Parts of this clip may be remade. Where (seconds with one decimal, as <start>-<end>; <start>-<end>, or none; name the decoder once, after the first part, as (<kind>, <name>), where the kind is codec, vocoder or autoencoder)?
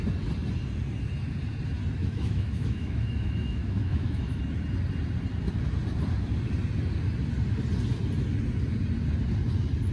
2.0-4.4 (autoencoder, DAC-VAE)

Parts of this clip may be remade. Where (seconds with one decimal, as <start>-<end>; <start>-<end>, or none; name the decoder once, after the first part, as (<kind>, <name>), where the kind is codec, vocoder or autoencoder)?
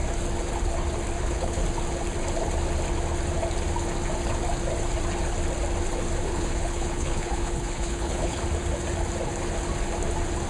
1.2-1.6 (codec, HILCodec); 6.2-8.4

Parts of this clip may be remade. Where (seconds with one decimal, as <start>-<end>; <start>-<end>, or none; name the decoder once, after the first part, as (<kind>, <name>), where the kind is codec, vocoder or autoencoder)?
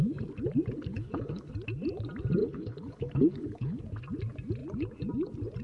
0.9-1.5 (codec, HILCodec); 2.4-3.8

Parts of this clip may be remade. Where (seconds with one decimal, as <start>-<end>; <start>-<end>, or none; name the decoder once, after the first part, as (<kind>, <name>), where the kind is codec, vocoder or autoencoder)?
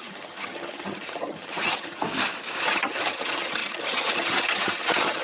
0.0-2.0 (vocoder, HiFi-GAN); 2.6-5.2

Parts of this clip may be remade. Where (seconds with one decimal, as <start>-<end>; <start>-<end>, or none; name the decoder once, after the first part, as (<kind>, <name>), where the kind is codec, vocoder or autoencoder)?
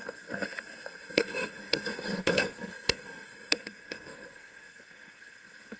0.0-5.8 (codec, SNAC)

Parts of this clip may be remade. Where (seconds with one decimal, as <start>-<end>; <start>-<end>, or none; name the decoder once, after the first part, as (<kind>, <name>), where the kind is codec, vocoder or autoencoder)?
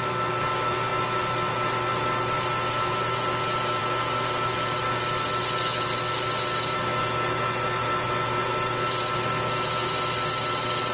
none